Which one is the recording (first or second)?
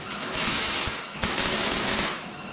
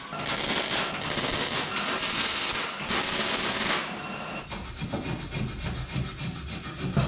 second